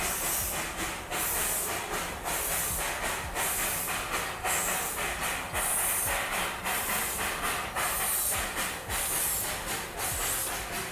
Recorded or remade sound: recorded